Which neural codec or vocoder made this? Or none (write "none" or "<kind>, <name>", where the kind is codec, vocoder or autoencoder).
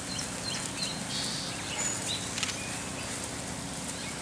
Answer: none